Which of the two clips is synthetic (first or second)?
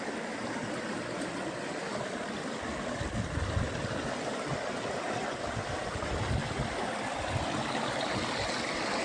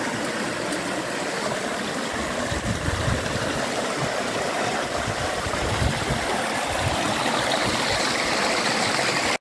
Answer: second